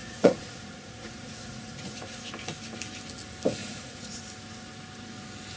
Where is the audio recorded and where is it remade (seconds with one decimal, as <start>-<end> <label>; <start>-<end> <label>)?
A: 0.0-2.3 remade; 2.3-3.6 recorded; 3.6-4.2 remade; 4.2-5.6 recorded